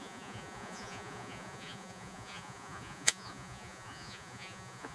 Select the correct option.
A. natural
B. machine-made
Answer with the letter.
B